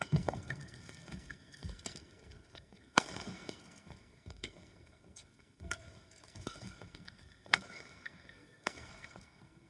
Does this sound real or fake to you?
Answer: fake